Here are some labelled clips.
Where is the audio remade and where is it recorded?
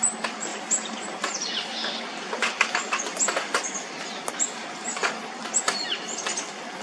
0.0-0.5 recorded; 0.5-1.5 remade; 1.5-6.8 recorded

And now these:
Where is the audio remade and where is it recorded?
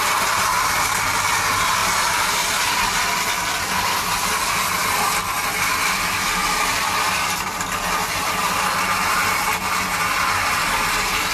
0.0-11.3 recorded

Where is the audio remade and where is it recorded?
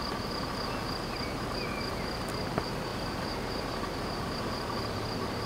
0.0-2.9 recorded; 2.9-4.4 remade; 4.4-5.5 recorded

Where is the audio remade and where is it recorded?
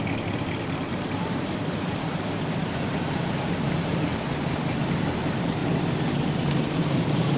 0.0-4.1 remade; 4.1-5.1 recorded; 5.1-5.6 remade; 5.6-6.5 recorded; 6.5-7.4 remade